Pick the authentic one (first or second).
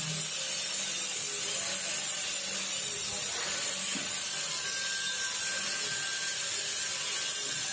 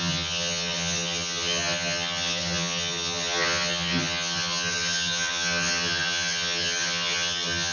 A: first